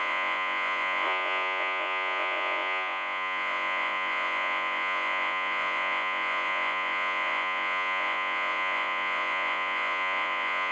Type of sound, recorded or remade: remade